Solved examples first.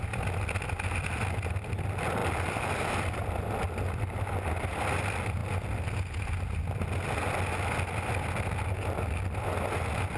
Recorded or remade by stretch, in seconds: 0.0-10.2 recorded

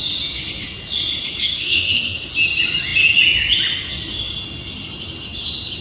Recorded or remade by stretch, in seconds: 0.0-1.4 recorded; 1.4-2.3 remade; 2.3-5.8 recorded

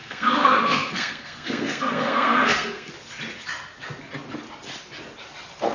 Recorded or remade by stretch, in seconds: 0.0-2.9 remade; 2.9-5.7 recorded

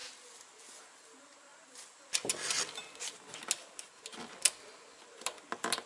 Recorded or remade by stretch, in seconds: 0.0-5.9 recorded

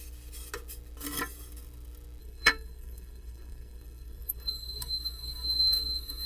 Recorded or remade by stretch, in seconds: 0.0-2.2 recorded; 2.2-6.3 remade